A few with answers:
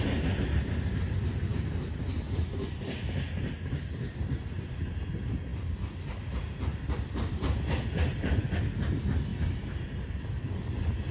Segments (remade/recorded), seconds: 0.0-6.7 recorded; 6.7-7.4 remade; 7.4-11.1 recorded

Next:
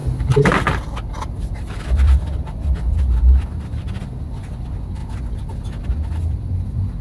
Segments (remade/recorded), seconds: 0.0-5.0 remade; 5.0-6.1 recorded; 6.1-7.0 remade

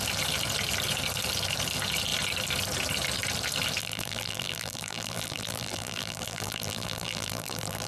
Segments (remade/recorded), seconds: 0.0-3.8 recorded; 3.8-7.9 remade